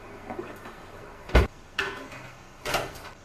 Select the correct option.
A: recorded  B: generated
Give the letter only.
B